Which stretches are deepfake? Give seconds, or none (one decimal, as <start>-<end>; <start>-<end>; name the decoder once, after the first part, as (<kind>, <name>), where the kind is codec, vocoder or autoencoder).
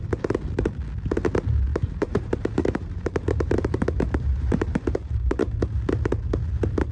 1.7-5.8 (vocoder, BigVGAN v2)